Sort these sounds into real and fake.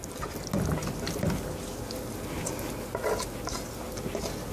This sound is real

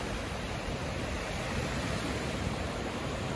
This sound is fake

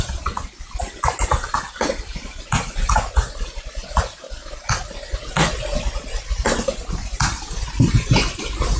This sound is real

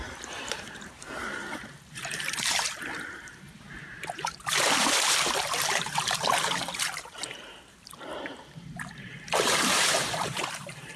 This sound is fake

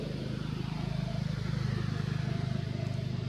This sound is real